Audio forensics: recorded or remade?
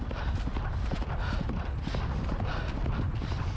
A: recorded